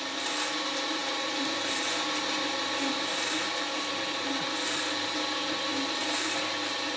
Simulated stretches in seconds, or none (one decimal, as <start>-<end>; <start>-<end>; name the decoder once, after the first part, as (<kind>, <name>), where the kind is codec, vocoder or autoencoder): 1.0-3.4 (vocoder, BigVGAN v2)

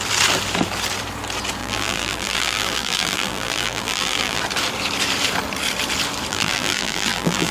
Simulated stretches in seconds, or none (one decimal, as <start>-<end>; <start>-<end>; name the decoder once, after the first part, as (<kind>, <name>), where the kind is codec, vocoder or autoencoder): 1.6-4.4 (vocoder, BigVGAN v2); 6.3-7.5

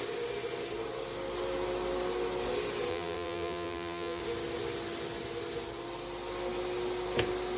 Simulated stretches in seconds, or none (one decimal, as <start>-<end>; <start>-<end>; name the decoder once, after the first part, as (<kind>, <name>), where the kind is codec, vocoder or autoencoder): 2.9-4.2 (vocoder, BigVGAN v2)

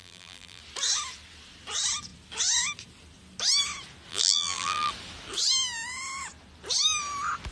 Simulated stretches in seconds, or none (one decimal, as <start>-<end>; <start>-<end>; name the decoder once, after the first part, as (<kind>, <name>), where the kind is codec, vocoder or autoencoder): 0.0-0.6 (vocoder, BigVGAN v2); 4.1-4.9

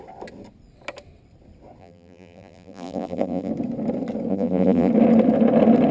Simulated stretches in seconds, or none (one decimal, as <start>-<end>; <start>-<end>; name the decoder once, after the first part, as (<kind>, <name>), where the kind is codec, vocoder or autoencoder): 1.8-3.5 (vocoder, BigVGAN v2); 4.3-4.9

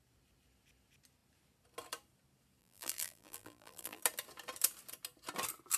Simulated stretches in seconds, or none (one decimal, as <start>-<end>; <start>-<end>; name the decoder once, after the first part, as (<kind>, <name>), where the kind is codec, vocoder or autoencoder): 2.6-4.0 (vocoder, BigVGAN v2)